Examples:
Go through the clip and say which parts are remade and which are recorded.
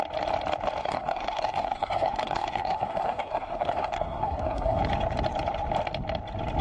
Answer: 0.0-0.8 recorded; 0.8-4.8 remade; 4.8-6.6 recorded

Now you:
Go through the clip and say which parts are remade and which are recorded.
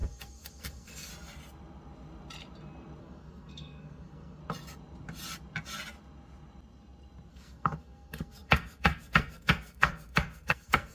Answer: 0.0-1.1 remade; 1.1-3.0 recorded; 3.0-4.4 remade; 4.4-7.3 recorded; 7.3-10.9 remade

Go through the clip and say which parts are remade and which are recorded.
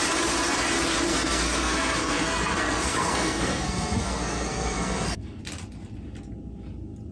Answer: 0.0-1.1 recorded; 1.1-5.4 remade; 5.4-7.1 recorded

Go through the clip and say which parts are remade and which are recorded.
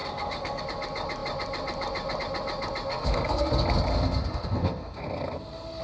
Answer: 0.0-0.6 remade; 0.6-2.9 recorded; 2.9-3.5 remade; 3.5-3.9 recorded; 3.9-5.8 remade